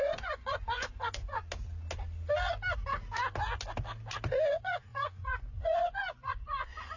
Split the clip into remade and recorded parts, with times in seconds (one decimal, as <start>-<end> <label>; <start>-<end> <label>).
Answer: 0.0-1.4 remade; 1.4-4.5 recorded; 4.5-7.0 remade